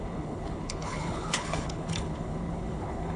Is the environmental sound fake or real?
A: fake